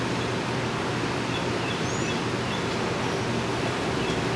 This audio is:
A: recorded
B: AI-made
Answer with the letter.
A